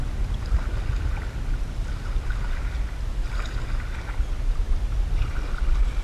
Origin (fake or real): real